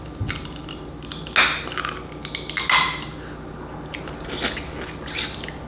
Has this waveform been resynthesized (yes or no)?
no